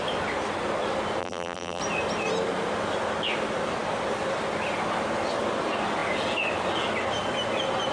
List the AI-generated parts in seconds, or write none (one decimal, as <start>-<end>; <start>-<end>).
1.2-1.8